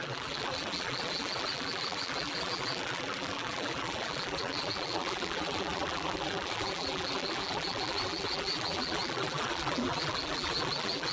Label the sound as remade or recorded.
remade